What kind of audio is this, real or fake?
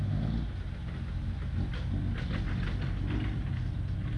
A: real